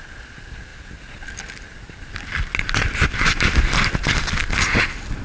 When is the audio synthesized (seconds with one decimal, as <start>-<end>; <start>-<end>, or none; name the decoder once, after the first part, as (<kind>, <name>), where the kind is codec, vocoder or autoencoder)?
none